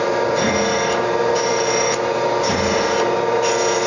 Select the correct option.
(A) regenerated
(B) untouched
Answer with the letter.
B